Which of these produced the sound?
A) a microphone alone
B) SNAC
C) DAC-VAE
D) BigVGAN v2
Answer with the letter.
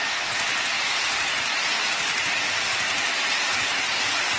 D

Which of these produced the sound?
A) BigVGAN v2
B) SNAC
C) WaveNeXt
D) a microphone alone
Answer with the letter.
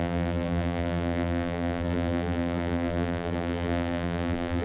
A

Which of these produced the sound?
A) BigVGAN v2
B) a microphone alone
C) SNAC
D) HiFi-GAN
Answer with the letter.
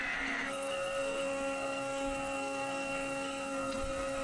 C